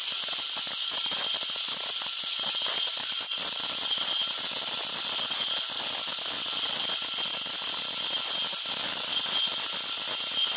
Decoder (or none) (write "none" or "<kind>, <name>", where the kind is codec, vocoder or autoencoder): none